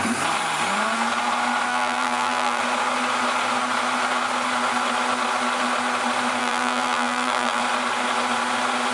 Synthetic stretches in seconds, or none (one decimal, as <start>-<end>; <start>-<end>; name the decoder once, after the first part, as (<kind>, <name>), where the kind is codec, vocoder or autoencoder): 1.7-2.6 (vocoder, BigVGAN v2); 6.4-7.6